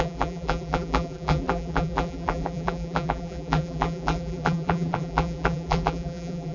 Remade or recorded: remade